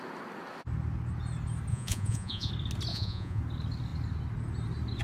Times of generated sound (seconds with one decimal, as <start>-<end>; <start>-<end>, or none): 1.7-2.5; 2.9-3.4